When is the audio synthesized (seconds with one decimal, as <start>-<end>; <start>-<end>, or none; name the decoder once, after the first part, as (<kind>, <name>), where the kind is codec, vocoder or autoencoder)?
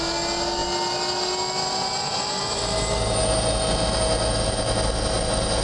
none